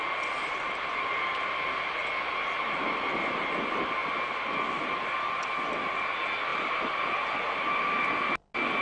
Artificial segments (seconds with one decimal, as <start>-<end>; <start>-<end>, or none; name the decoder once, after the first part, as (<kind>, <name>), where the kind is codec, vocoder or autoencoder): none